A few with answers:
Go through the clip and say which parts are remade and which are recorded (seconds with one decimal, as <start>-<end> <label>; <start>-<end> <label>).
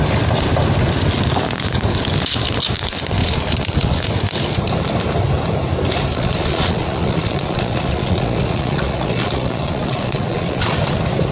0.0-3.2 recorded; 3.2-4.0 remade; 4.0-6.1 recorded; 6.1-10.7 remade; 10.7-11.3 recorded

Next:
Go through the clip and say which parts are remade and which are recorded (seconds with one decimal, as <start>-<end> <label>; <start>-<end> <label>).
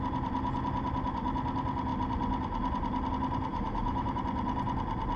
0.0-3.5 recorded; 3.5-4.2 remade; 4.2-5.2 recorded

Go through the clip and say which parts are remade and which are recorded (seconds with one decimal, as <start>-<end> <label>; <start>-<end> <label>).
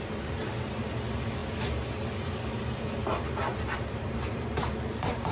0.0-3.5 recorded; 3.5-4.5 remade; 4.5-5.3 recorded